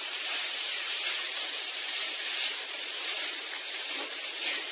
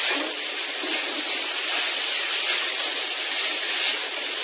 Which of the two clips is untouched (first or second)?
second